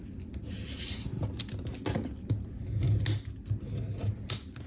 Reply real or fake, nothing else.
real